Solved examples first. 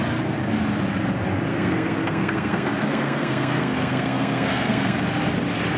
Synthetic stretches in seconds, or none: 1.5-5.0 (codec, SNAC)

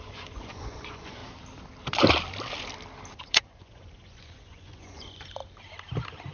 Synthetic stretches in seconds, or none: 0.0-1.2 (vocoder, Vocos); 3.2-5.4

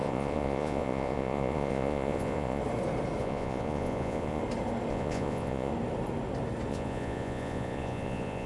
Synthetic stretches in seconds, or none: 0.0-2.6 (vocoder, Vocos); 3.2-4.4; 4.9-5.7; 6.7-8.5

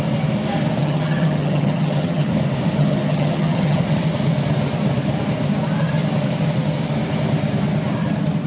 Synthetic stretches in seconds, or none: 0.8-2.3 (vocoder, HiFi-GAN); 2.8-3.8

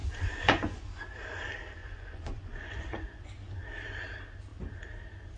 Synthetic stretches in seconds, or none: 0.0-0.9 (vocoder, Vocos); 1.8-3.3

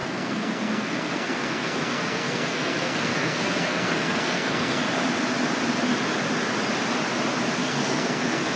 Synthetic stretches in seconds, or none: 0.0-4.8 (codec, SNAC); 7.6-8.6

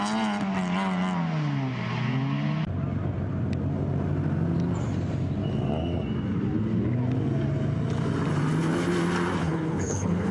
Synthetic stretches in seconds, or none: 9.4-10.3 (codec, HILCodec)